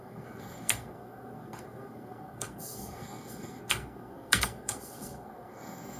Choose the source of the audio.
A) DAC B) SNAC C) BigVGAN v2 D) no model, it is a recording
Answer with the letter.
B